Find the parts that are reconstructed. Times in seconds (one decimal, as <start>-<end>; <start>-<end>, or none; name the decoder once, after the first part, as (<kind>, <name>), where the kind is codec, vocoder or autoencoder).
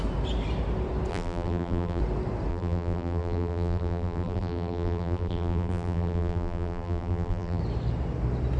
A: 1.1-2.0 (vocoder, BigVGAN v2); 2.5-7.6